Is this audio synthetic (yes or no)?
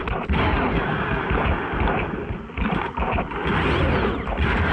no